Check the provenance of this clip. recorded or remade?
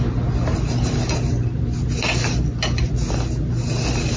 recorded